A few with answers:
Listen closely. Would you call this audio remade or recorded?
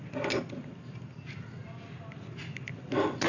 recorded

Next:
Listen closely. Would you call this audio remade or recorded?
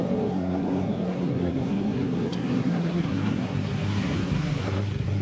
remade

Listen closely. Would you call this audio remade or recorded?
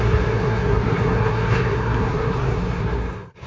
remade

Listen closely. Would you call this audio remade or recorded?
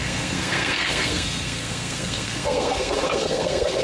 remade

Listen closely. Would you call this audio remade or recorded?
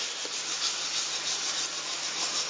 recorded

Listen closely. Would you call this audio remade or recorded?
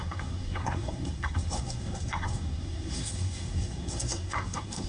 remade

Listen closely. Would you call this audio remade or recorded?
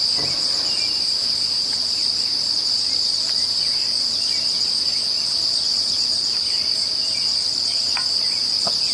recorded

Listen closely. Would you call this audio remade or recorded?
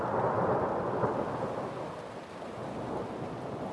recorded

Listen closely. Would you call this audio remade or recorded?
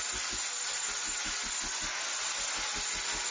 recorded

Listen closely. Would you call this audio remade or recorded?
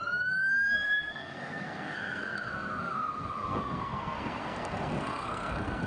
remade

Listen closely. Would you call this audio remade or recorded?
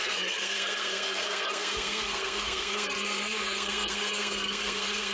remade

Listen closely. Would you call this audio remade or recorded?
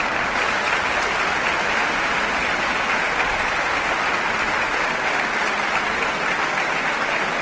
recorded